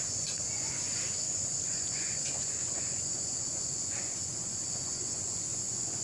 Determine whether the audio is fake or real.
fake